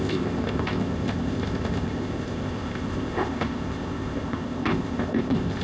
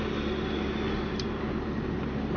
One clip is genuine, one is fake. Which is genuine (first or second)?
second